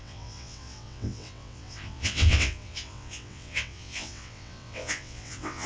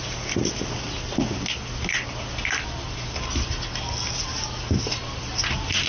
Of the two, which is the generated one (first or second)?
first